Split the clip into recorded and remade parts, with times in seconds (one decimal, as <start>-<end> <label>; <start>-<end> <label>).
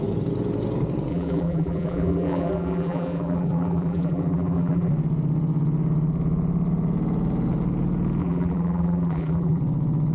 0.0-1.1 recorded; 1.1-4.9 remade; 4.9-8.2 recorded; 8.2-9.6 remade; 9.6-10.1 recorded